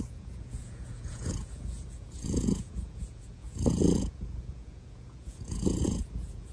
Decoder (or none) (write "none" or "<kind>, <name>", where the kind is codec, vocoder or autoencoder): vocoder, Vocos